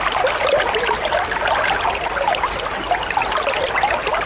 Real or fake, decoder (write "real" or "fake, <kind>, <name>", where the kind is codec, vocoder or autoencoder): real